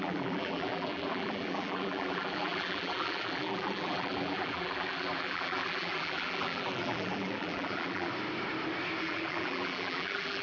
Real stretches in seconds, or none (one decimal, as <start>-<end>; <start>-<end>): 8.1-9.0